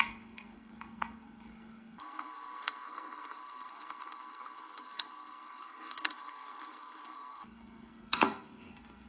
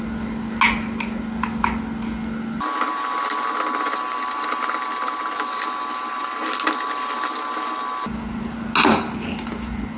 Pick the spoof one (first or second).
first